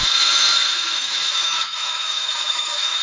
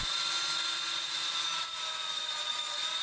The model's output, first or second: first